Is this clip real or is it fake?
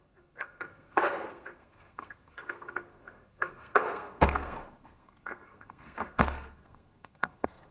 fake